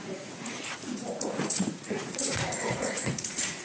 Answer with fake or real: fake